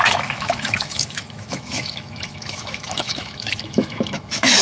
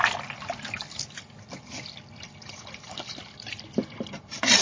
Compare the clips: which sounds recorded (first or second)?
second